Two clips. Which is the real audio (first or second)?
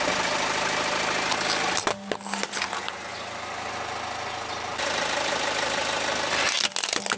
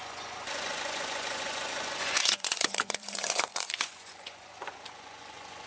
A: first